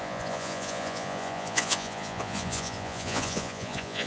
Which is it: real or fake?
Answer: fake